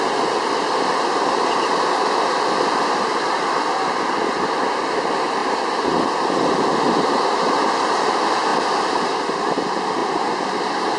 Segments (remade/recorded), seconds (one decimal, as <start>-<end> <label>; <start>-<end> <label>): 0.0-11.0 recorded